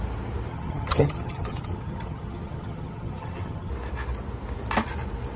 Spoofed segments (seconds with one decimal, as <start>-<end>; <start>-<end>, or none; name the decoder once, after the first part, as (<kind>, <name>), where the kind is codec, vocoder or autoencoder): 0.5-3.7 (vocoder, HiFi-GAN)